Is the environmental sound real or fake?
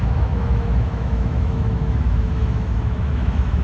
fake